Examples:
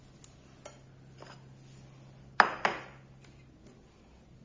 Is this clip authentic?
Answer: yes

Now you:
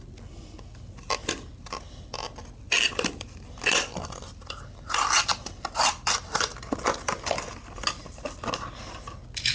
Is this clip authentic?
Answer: yes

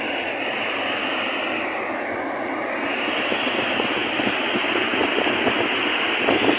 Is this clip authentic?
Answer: yes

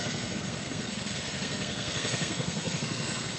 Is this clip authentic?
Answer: no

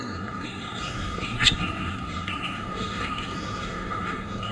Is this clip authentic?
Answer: no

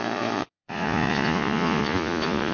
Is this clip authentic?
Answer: no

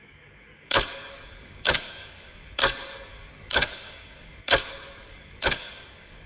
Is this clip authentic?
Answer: no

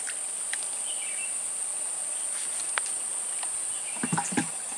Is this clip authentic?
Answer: yes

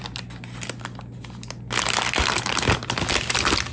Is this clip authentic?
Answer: yes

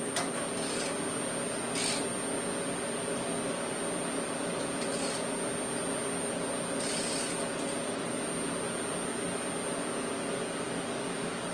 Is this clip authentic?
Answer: yes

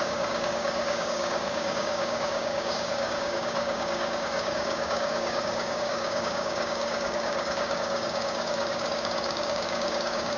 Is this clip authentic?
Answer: no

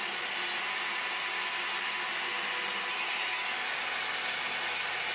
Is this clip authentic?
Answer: yes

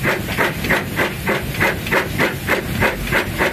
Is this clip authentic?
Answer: yes